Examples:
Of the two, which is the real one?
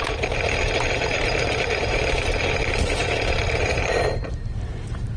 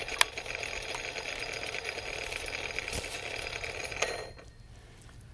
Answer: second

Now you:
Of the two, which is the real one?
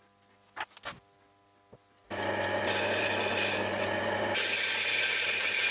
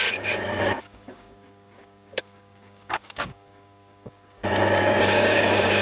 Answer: first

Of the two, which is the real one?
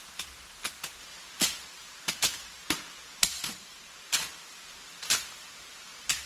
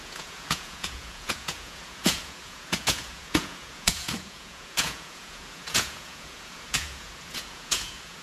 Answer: first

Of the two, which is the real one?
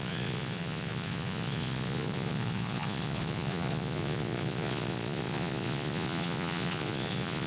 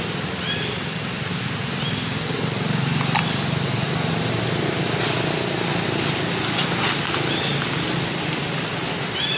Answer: second